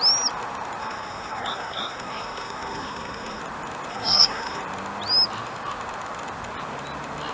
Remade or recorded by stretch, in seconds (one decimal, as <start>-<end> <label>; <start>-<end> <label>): 0.0-0.8 recorded; 0.8-3.4 remade; 3.4-3.9 recorded; 3.9-4.6 remade; 4.6-7.3 recorded